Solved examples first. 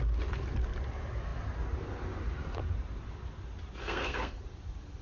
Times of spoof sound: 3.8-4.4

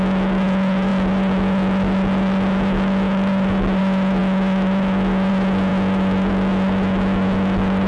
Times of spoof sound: 0.0-7.9